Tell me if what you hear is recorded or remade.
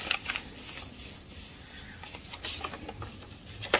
recorded